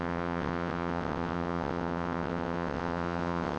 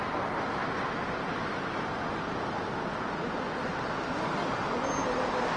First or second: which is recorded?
second